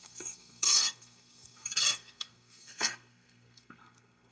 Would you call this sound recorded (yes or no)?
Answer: no